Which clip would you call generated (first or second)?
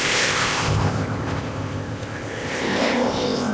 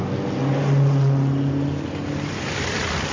first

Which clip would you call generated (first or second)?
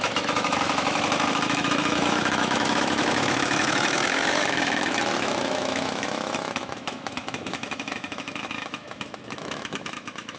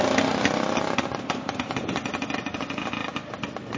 first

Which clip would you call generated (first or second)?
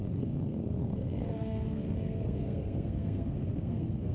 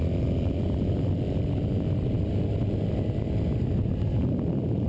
first